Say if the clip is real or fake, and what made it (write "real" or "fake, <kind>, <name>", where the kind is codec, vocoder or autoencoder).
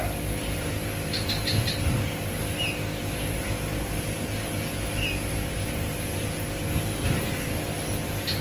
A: real